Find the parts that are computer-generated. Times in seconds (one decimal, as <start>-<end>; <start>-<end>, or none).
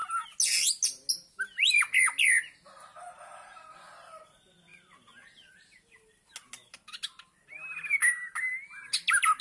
none